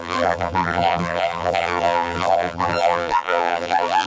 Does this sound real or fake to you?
fake